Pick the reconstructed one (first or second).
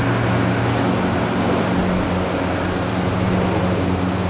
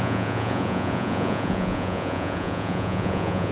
second